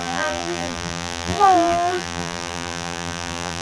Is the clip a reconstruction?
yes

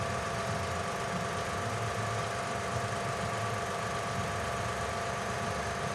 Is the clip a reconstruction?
no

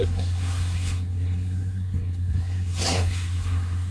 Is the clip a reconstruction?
yes